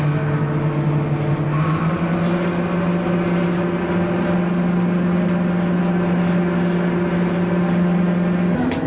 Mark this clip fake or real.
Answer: real